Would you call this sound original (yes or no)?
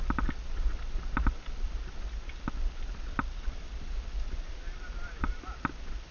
yes